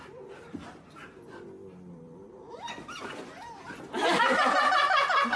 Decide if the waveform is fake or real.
real